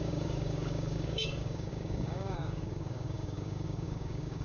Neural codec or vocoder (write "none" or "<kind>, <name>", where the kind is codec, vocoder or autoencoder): codec, DAC